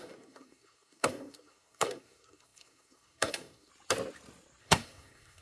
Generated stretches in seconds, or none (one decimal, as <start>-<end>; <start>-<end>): 0.0-3.7; 4.6-5.4